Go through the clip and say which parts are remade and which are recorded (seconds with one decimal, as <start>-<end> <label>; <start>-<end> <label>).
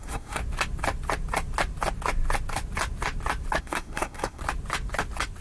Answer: 0.0-0.4 remade; 0.4-3.6 recorded; 3.6-4.4 remade; 4.4-5.4 recorded